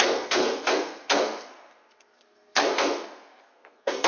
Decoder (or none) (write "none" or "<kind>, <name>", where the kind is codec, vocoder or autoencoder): codec, SNAC